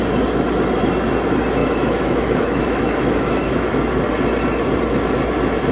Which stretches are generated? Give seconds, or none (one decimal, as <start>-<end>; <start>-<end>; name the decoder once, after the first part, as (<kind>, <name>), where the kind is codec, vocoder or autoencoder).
1.6-3.8 (autoencoder, DAC-VAE)